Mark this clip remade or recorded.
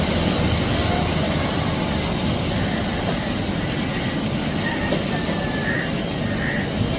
recorded